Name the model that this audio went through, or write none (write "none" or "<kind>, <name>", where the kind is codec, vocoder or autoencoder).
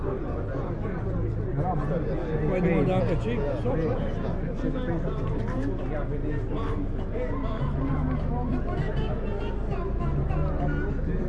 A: none